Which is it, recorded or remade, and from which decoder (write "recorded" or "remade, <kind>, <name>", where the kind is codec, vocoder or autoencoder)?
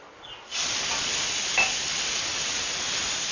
recorded